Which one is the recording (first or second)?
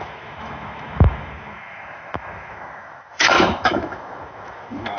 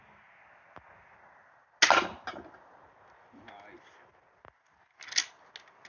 second